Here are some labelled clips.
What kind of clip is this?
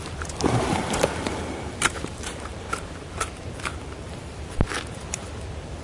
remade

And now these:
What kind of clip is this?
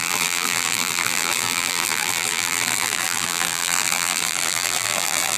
remade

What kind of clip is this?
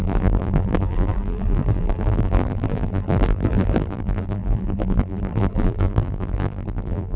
remade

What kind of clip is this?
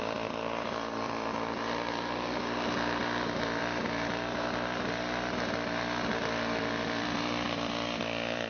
remade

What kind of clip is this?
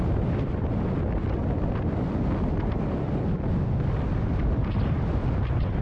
recorded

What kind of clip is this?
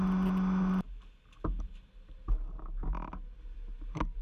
recorded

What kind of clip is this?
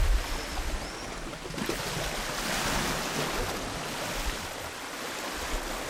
recorded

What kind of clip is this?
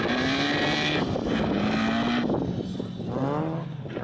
recorded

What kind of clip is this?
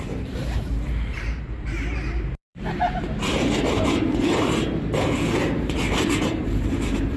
remade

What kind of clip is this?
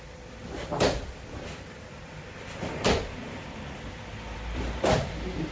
remade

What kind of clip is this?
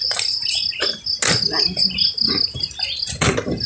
recorded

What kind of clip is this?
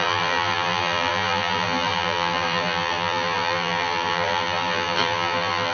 remade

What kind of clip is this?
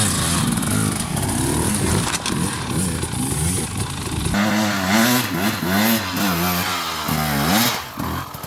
recorded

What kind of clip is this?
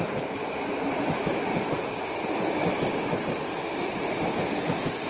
remade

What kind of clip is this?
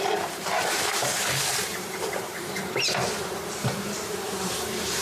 remade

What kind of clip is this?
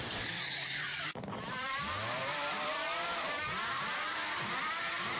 remade